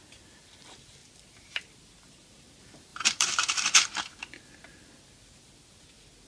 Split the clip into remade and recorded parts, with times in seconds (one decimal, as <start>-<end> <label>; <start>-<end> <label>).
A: 0.0-1.0 recorded; 1.0-1.6 remade; 1.6-2.9 recorded; 2.9-4.2 remade; 4.2-6.3 recorded